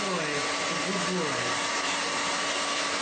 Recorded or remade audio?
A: recorded